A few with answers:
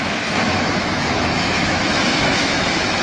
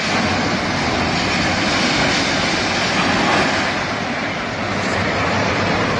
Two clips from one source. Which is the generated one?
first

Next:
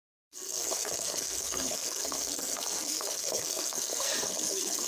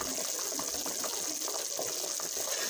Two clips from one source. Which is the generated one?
first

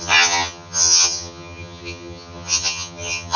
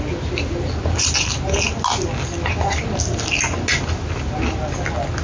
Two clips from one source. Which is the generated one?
first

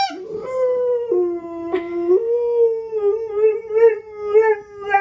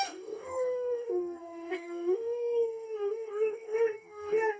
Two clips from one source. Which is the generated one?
second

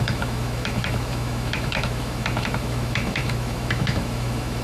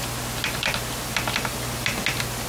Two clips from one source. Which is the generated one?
first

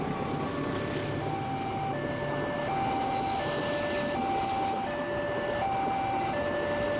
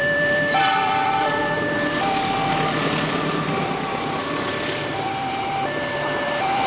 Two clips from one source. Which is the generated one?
second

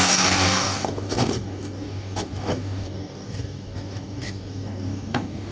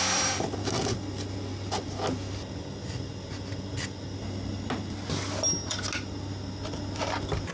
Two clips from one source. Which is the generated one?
first